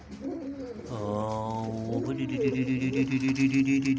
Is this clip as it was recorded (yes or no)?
yes